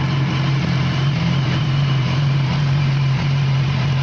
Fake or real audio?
fake